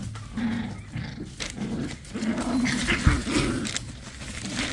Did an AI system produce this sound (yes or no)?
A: no